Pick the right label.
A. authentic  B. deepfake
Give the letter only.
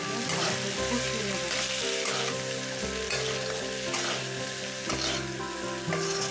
A